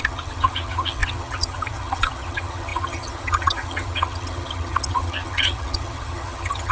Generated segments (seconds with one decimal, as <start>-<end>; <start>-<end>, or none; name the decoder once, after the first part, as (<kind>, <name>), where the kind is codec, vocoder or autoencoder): 0.0-6.7 (vocoder, HiFi-GAN)